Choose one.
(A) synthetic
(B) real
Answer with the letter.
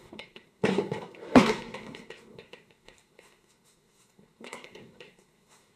A